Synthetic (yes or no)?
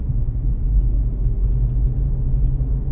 no